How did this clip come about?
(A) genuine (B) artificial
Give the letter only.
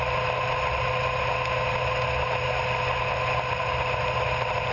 A